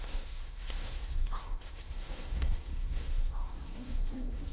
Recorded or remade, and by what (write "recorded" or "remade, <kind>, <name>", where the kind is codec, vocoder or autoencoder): remade, codec, SNAC